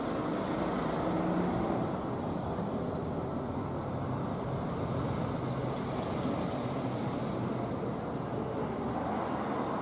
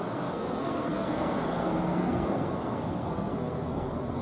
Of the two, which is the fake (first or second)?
second